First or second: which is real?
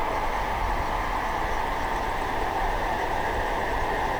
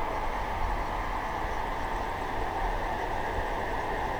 second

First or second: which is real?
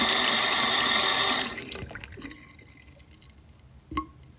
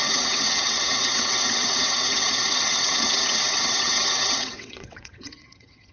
first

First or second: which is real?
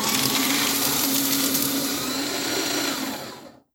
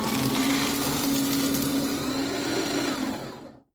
second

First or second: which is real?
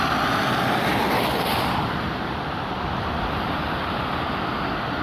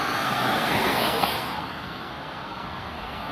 first